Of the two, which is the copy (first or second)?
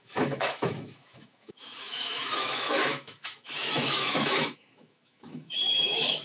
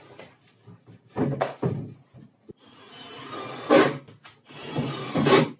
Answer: first